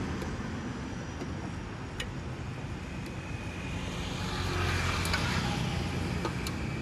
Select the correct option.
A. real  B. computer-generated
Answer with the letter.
A